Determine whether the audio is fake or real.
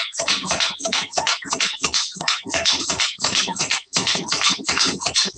fake